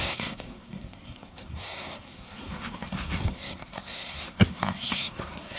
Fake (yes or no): yes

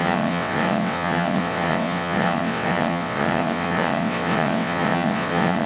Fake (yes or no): yes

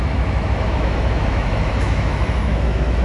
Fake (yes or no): yes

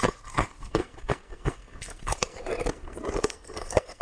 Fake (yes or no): yes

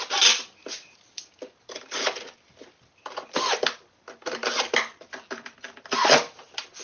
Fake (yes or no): no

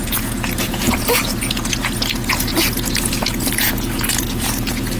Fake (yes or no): yes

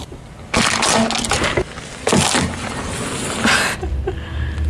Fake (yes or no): no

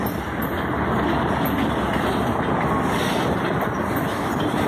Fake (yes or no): no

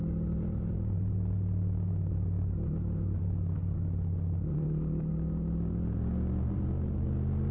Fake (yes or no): no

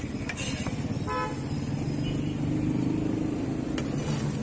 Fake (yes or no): no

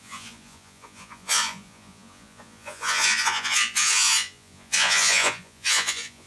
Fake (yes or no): yes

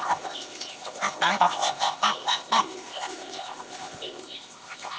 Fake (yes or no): yes